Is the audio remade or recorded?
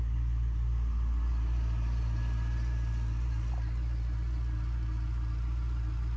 recorded